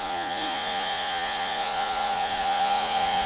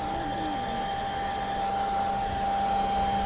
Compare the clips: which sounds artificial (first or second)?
first